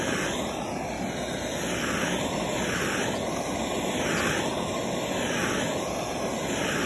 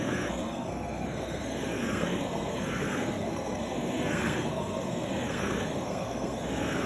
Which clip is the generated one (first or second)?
second